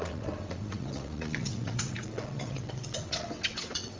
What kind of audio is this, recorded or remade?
remade